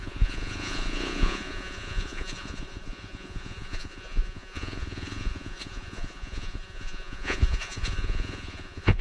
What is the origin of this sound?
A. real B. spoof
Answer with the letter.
B